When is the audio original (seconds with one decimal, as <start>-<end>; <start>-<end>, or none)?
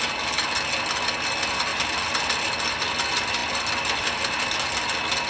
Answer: 0.0-1.7; 2.2-5.3